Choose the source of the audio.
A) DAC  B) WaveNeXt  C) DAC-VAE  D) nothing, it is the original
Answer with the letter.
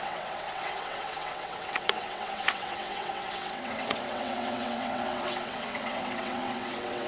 B